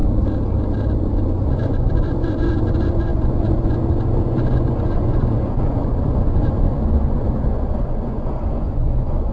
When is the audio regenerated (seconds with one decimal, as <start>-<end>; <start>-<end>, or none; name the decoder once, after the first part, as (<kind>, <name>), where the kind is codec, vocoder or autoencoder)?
1.0-9.3 (vocoder, Vocos)